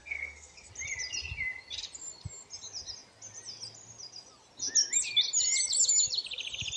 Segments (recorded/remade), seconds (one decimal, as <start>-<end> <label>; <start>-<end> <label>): 0.0-0.7 remade; 0.7-6.8 recorded